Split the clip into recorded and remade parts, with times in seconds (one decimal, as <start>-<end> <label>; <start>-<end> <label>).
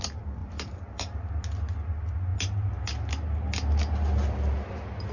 0.0-0.4 recorded; 0.4-1.3 remade; 1.3-5.1 recorded